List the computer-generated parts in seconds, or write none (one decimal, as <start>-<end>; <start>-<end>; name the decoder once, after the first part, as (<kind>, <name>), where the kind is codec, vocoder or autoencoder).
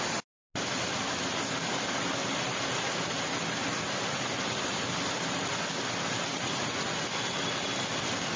3.6-4.3 (vocoder, BigVGAN v2)